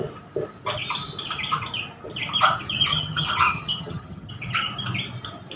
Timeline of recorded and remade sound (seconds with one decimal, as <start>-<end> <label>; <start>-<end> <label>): 0.0-2.9 recorded; 2.9-4.3 remade; 4.3-5.6 recorded